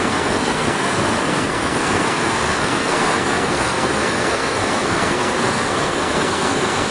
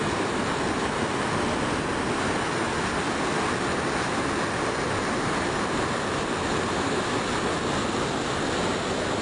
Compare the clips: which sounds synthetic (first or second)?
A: first